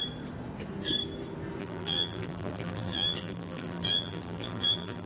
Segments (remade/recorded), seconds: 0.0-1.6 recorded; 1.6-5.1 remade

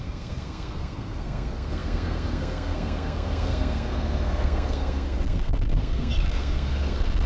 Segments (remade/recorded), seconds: 0.0-7.3 remade